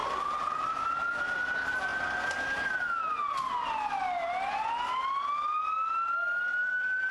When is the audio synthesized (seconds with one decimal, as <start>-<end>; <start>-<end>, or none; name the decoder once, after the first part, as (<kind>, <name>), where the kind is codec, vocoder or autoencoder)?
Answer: 0.0-0.9 (vocoder, BigVGAN v2); 6.5-7.1